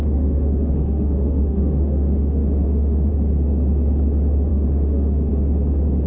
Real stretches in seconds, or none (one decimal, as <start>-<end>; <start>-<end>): 3.1-4.5; 5.3-6.1